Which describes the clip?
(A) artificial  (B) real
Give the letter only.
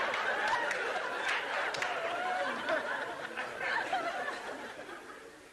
B